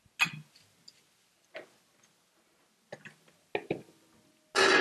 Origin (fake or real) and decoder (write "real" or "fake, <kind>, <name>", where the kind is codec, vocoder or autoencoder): real